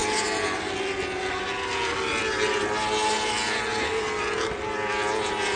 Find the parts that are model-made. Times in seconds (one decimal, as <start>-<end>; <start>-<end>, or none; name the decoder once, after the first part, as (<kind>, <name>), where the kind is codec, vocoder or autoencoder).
none